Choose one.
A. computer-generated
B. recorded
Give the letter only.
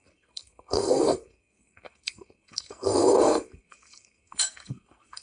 A